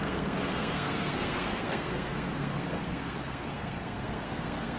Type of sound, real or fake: fake